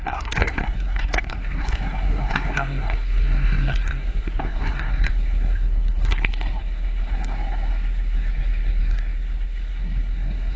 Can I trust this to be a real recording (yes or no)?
no